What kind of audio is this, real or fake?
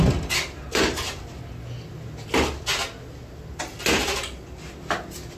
real